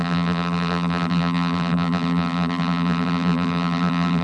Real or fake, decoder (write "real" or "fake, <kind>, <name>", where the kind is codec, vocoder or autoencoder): fake, vocoder, BigVGAN v2